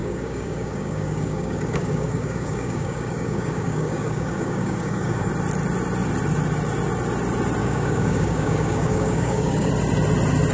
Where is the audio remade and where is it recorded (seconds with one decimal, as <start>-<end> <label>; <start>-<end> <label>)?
0.0-5.3 remade; 5.3-7.6 recorded; 7.6-9.7 remade; 9.7-10.5 recorded